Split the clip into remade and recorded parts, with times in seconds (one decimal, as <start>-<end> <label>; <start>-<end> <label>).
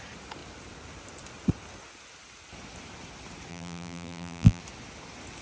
0.0-3.5 recorded; 3.5-4.6 remade; 4.6-5.4 recorded